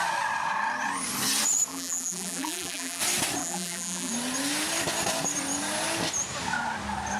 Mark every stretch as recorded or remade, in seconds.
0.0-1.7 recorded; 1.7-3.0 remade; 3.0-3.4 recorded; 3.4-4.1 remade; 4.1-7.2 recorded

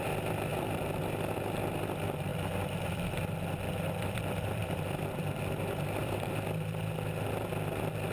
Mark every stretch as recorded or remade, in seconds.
0.0-0.5 recorded; 0.5-1.1 remade; 1.1-2.3 recorded; 2.3-3.0 remade; 3.0-4.6 recorded; 4.6-6.3 remade; 6.3-8.1 recorded

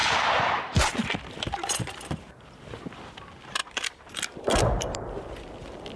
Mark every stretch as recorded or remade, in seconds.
0.0-0.6 remade; 0.6-3.6 recorded; 3.6-4.1 remade; 4.1-6.0 recorded

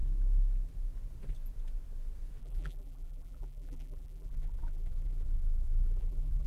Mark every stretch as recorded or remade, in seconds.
0.0-2.4 recorded; 2.4-6.5 remade

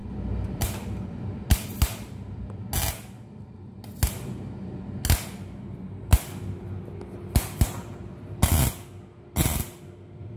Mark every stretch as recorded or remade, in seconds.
0.0-1.2 remade; 1.2-10.4 recorded